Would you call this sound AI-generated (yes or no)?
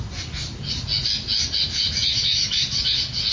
no